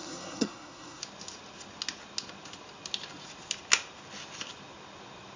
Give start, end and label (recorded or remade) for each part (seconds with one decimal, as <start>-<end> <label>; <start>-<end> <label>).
0.0-1.0 remade; 1.0-5.4 recorded